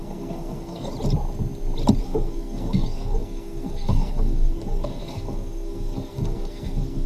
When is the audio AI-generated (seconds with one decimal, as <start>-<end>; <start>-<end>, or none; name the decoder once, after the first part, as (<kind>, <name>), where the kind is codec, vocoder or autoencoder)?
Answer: 0.0-0.9 (codec, SNAC); 2.0-7.1